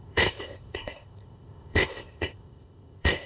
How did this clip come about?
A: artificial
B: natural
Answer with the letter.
A